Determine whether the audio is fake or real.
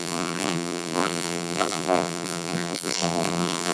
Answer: fake